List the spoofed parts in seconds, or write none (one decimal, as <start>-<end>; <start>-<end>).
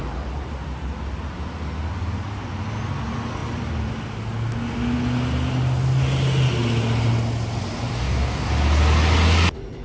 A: 7.9-8.5